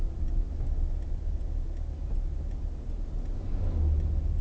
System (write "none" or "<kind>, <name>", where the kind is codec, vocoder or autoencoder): none